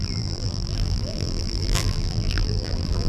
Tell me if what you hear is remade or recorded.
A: remade